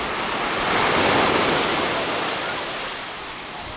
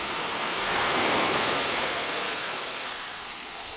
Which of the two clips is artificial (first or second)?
second